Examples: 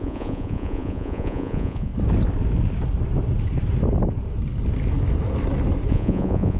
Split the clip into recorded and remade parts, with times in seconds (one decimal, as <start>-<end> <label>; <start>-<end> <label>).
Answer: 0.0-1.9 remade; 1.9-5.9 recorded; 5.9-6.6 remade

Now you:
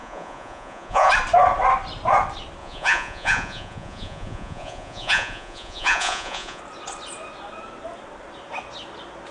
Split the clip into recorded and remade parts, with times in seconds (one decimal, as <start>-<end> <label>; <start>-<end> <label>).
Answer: 0.0-1.1 remade; 1.1-2.6 recorded; 2.6-6.6 remade; 6.6-9.3 recorded

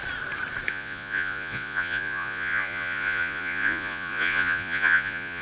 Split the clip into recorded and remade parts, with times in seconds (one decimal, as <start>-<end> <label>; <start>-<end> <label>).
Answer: 0.0-0.7 recorded; 0.7-5.4 remade